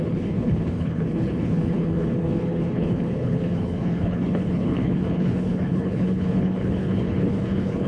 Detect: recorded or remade remade